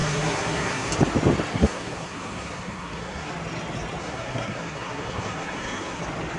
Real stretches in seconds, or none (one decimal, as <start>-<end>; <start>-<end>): 0.9-1.5; 3.3-4.0; 6.0-6.4